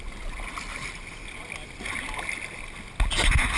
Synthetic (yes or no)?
no